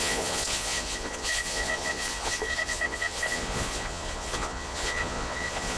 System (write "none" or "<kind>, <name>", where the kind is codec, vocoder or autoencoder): vocoder, Vocos